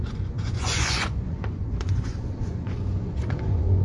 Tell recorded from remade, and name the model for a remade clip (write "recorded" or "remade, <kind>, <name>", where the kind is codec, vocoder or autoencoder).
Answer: remade, vocoder, Vocos